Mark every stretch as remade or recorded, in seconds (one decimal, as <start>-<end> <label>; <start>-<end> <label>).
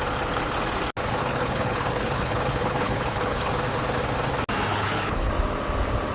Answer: 0.0-1.2 recorded; 1.2-3.5 remade; 3.5-4.7 recorded; 4.7-5.3 remade; 5.3-6.1 recorded